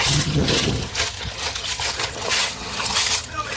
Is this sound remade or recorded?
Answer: remade